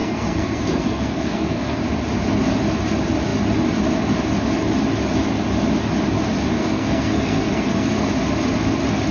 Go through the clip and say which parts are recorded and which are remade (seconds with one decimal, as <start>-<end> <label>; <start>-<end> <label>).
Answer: 0.0-1.8 remade; 1.8-6.6 recorded; 6.6-8.1 remade; 8.1-9.1 recorded